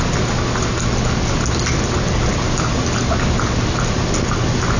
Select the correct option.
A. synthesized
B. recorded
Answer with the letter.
B